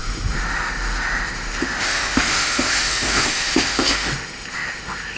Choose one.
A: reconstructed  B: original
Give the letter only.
A